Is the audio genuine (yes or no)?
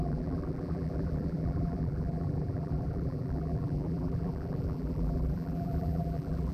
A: no